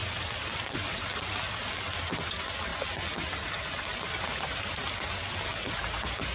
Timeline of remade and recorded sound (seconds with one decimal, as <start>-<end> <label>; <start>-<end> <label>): 0.0-1.1 remade; 1.1-6.3 recorded

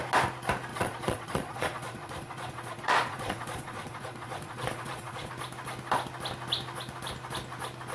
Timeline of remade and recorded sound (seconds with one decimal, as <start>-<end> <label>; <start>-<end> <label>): 0.0-0.7 recorded; 0.7-5.3 remade; 5.3-7.9 recorded

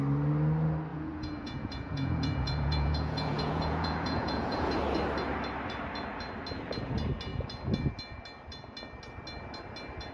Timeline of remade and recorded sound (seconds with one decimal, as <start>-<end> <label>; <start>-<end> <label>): 0.0-0.9 recorded; 0.9-4.7 remade; 4.7-10.1 recorded